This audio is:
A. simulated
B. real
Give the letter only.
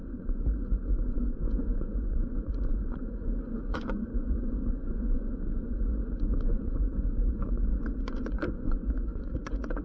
A